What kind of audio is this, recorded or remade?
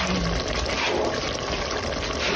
recorded